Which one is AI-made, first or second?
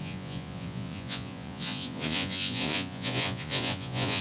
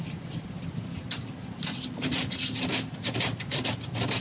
first